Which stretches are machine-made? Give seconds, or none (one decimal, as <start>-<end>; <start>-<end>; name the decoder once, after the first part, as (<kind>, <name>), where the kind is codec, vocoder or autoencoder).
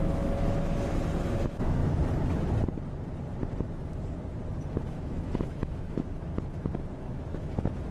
0.0-1.8 (autoencoder, DAC-VAE); 4.9-6.3; 7.0-7.9